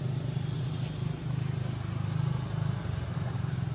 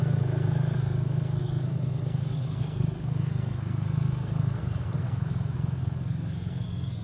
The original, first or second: first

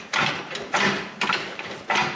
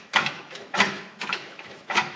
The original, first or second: first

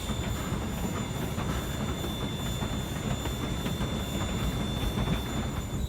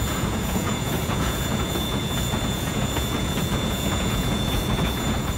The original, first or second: first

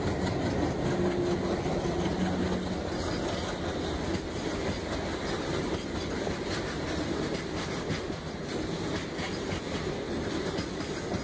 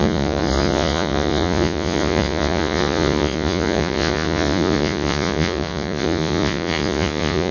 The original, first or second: first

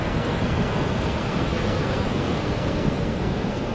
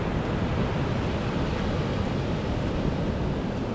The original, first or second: second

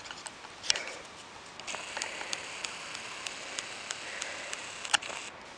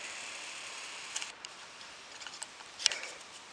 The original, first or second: first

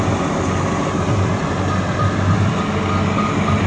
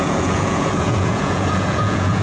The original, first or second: first